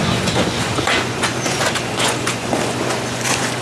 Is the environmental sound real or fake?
fake